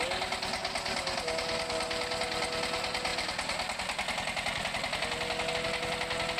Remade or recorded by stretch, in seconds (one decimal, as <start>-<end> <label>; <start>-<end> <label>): 0.0-6.4 recorded